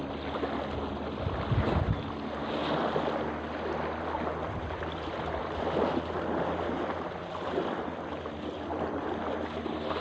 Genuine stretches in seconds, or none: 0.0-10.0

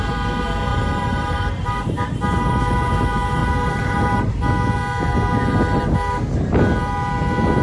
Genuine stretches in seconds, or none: 0.0-0.7; 2.6-3.4; 4.3-7.6